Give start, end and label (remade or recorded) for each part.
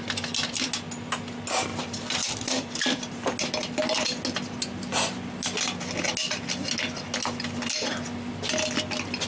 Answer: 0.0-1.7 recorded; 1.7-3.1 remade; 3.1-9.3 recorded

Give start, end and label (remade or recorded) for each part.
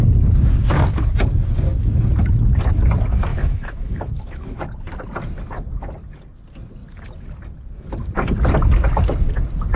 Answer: 0.0-3.3 recorded; 3.3-4.6 remade; 4.6-9.8 recorded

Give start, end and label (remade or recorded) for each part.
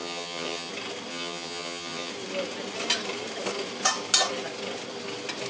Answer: 0.0-0.7 remade; 0.7-1.1 recorded; 1.1-2.1 remade; 2.1-5.5 recorded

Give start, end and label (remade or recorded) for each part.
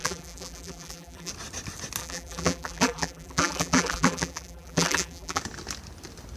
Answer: 0.0-1.3 remade; 1.3-2.0 recorded; 2.0-5.4 remade; 5.4-6.4 recorded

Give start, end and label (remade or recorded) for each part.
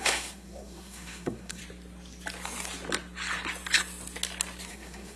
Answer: 0.0-1.6 remade; 1.6-4.7 recorded; 4.7-5.2 remade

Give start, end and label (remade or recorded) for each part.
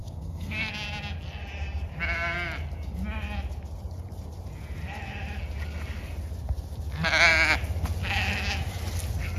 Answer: 0.0-0.7 remade; 0.7-9.4 recorded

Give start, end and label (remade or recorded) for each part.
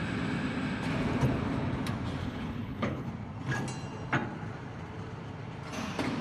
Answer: 0.0-2.2 recorded; 2.2-3.1 remade; 3.1-6.2 recorded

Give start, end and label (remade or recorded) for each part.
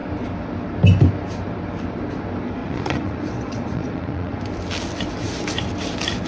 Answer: 0.0-2.6 recorded; 2.6-4.4 remade; 4.4-6.3 recorded